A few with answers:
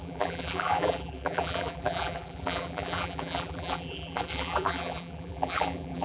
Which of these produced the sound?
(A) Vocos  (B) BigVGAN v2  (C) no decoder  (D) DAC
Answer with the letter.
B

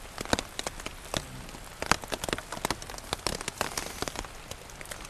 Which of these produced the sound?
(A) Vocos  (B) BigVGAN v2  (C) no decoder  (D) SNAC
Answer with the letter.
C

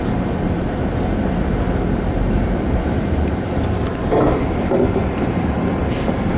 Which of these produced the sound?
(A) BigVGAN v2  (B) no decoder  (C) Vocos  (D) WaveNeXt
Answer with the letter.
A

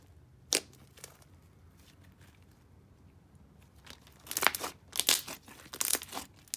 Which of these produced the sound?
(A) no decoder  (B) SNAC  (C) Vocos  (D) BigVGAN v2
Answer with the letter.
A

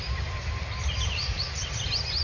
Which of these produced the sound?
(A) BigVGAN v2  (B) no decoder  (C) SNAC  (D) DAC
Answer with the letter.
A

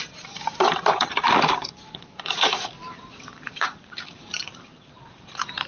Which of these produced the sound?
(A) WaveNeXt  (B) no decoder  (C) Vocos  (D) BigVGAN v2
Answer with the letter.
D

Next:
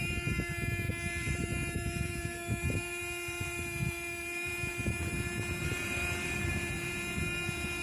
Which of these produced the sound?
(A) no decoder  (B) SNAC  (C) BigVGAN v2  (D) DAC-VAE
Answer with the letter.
C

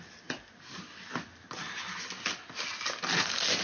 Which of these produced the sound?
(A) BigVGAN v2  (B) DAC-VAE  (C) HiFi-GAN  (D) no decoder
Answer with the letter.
D